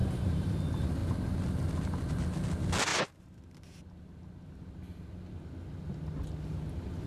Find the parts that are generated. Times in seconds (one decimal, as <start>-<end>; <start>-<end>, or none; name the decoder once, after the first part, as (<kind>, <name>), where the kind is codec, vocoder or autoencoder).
0.0-0.6 (vocoder, BigVGAN v2); 2.9-3.4